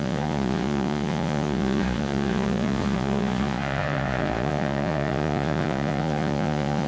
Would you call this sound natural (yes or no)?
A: no